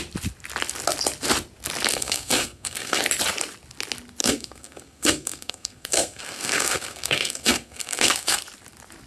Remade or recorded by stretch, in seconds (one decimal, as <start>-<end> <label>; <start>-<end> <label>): 0.0-1.9 recorded; 1.9-3.0 remade; 3.0-4.2 recorded; 4.2-8.4 remade; 8.4-9.1 recorded